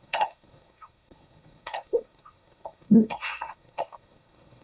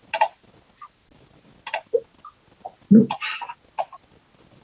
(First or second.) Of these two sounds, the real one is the second